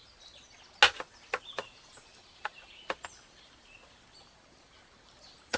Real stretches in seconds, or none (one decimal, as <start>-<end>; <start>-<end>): 0.0-5.6